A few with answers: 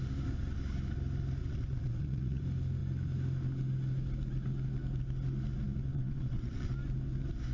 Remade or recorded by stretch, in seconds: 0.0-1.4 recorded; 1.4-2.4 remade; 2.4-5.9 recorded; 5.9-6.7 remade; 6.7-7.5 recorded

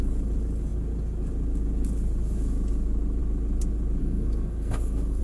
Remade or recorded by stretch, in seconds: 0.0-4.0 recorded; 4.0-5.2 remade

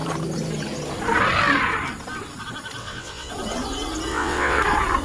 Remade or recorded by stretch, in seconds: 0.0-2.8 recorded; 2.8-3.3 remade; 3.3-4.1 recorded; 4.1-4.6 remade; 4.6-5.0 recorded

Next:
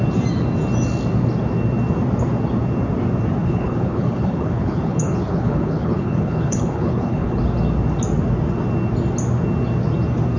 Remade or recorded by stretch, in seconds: 0.0-3.4 recorded; 3.4-7.4 remade; 7.4-10.4 recorded

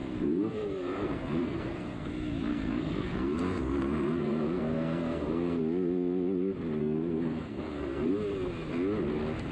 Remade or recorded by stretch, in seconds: 0.0-2.1 remade; 2.1-2.5 recorded; 2.5-5.6 remade; 5.6-6.8 recorded; 6.8-8.1 remade; 8.1-9.5 recorded

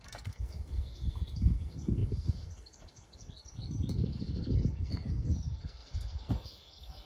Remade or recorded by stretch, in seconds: 0.0-7.1 remade

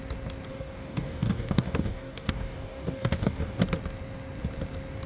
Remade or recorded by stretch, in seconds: 0.0-0.5 recorded; 0.5-3.6 remade; 3.6-5.1 recorded

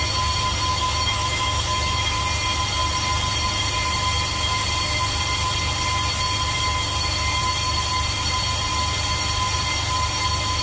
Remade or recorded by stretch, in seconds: 0.0-0.7 recorded; 0.7-2.2 remade; 2.2-10.6 recorded